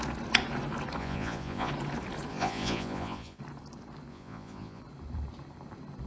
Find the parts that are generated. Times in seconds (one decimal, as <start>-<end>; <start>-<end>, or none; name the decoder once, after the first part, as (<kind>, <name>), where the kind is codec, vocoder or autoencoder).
1.0-1.7 (vocoder, Vocos); 2.3-3.4; 4.1-4.8